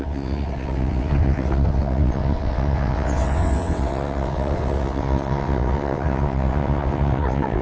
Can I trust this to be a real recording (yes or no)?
no